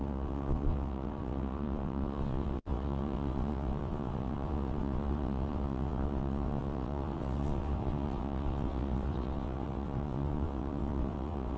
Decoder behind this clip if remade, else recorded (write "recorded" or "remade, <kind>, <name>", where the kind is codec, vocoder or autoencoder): remade, vocoder, WaveNeXt